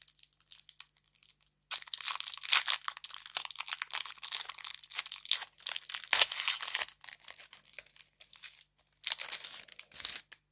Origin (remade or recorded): recorded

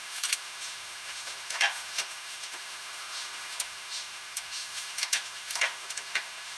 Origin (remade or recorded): remade